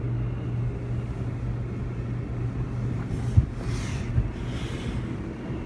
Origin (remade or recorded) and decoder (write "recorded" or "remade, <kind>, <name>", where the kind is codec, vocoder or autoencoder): recorded